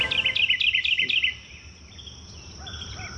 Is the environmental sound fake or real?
real